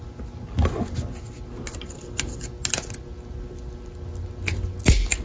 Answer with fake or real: real